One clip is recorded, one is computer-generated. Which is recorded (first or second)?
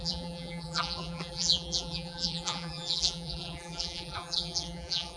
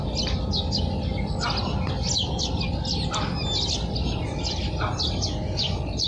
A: second